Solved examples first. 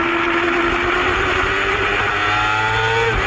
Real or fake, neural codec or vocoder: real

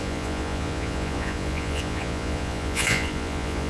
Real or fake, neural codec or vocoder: fake, vocoder, Vocos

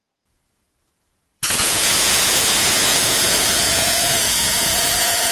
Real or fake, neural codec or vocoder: fake, vocoder, Vocos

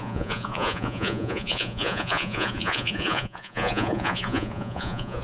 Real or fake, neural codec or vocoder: fake, vocoder, Vocos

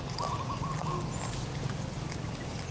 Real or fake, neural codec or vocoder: real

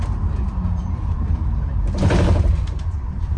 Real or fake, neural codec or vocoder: fake, vocoder, BigVGAN v2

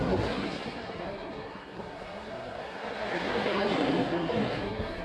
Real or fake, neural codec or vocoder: fake, codec, SNAC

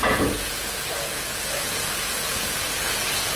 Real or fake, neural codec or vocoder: fake, vocoder, Vocos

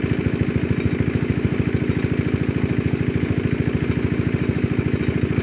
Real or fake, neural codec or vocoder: real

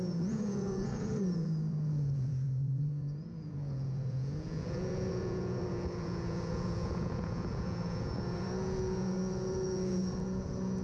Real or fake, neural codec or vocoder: fake, vocoder, Vocos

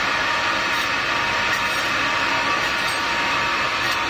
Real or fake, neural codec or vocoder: real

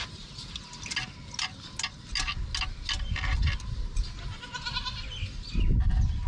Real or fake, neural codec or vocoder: real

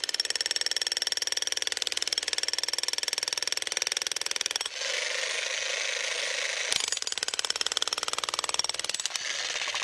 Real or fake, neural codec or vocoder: real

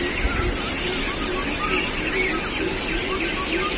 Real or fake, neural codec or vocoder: real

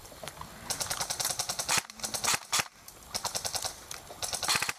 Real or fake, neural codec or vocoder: real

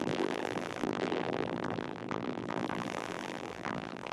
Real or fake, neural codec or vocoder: fake, vocoder, BigVGAN v2